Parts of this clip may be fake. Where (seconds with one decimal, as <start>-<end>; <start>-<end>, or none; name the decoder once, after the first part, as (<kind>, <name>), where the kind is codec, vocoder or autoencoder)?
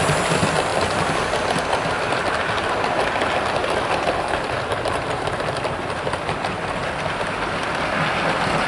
none